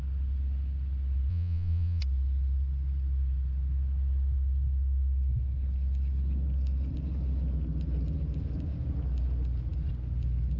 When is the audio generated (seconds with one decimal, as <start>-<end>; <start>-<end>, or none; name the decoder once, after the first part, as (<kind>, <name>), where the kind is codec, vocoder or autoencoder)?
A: 1.3-2.0 (vocoder, Vocos)